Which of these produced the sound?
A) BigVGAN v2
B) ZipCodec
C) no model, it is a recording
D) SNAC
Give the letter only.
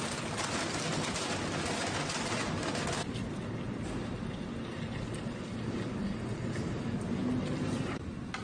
C